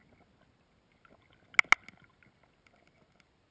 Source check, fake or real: real